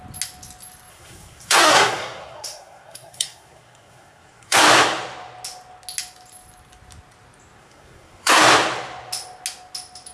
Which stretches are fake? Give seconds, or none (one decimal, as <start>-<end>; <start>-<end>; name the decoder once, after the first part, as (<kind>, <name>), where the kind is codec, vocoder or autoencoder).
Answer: 0.9-4.6 (codec, SNAC); 7.6-8.4